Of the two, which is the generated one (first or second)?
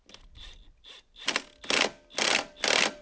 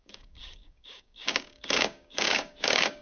second